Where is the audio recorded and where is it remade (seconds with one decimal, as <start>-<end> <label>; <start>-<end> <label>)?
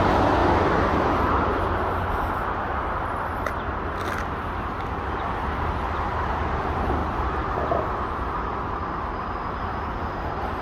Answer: 0.0-10.6 recorded